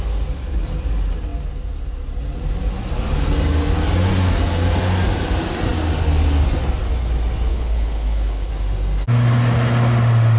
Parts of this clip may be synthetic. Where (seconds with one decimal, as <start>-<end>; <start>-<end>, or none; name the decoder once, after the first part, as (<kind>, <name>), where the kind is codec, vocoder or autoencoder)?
7.5-8.5 (codec, HILCodec)